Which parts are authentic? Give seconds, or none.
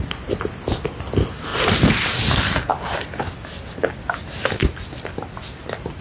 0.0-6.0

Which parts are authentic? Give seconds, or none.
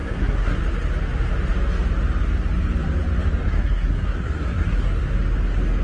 0.6-3.4; 5.1-5.8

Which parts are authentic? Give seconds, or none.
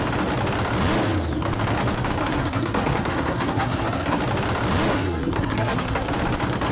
0.0-2.2; 4.2-4.9; 6.1-6.7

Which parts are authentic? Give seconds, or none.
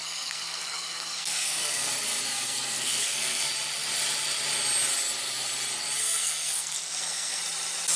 1.9-2.3; 3.5-6.0; 7.4-8.0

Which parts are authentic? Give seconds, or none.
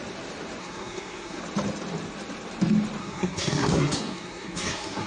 0.0-0.6; 1.4-3.0